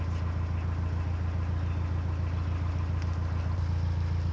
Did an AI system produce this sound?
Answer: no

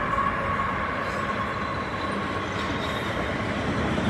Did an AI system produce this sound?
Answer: no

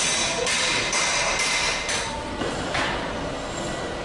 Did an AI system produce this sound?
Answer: no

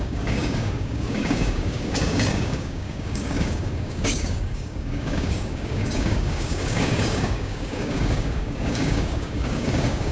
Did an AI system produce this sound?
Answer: yes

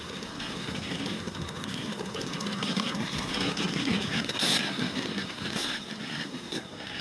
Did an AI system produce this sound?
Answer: yes